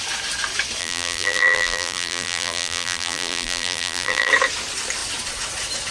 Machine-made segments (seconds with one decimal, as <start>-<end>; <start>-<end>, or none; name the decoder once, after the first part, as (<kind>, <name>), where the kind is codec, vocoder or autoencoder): 0.8-4.3 (vocoder, BigVGAN v2)